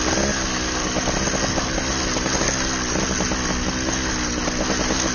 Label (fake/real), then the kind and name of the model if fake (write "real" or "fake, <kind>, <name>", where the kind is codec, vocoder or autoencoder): real